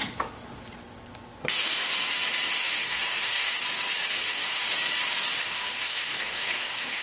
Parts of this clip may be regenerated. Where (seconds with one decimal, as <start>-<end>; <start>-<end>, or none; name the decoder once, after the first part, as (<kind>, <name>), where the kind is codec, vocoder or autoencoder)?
1.5-1.9 (codec, DAC); 2.6-3.6; 4.1-4.7; 5.4-7.0